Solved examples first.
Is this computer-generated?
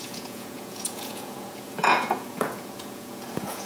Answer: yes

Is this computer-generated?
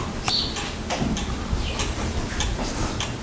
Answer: no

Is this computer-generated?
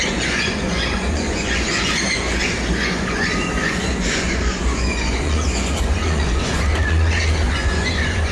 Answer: yes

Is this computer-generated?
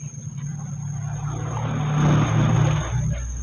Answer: no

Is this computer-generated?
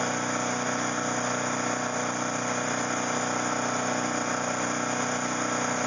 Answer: no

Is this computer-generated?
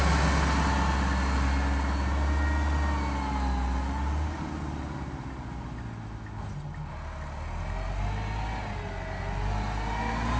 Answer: no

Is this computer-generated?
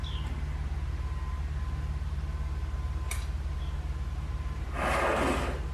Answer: no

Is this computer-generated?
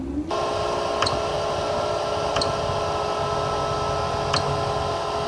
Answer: no